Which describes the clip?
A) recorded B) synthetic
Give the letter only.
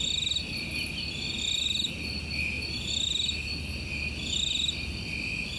A